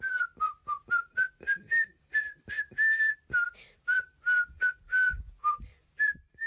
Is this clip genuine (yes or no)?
yes